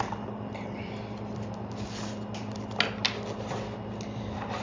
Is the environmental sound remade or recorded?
recorded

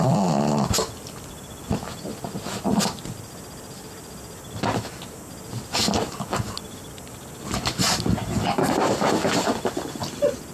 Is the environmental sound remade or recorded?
recorded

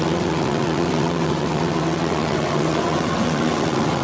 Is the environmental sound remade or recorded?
remade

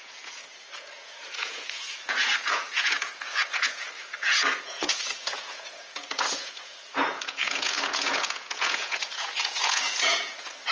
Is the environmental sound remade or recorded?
remade